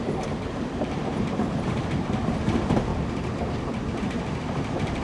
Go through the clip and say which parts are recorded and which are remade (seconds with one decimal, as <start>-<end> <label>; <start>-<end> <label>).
0.0-2.9 remade; 2.9-3.4 recorded; 3.4-5.0 remade